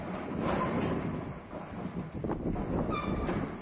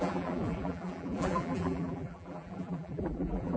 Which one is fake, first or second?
second